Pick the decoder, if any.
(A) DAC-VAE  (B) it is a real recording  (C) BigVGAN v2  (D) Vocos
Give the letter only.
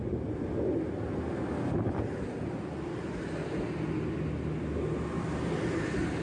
B